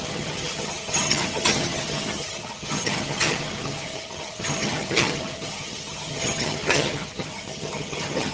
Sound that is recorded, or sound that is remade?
remade